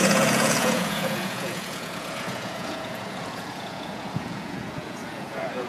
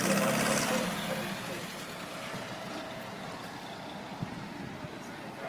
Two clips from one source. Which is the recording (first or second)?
second